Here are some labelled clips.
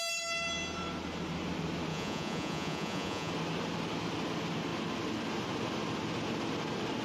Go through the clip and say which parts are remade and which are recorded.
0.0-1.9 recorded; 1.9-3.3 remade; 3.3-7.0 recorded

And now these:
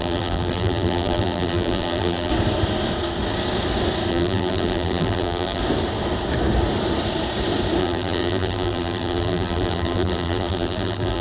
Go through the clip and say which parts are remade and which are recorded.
0.0-2.3 remade; 2.3-4.1 recorded; 4.1-5.6 remade; 5.6-7.8 recorded; 7.8-11.2 remade

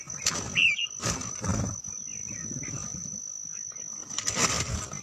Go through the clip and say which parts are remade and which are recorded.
0.0-0.6 recorded; 0.6-1.8 remade; 1.8-2.2 recorded; 2.2-3.2 remade; 3.2-5.0 recorded